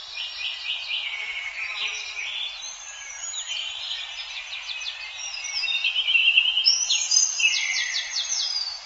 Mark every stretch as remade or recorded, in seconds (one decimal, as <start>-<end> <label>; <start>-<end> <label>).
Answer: 0.0-8.9 remade